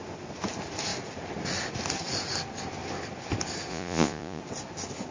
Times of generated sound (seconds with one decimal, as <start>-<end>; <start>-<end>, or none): 3.7-4.4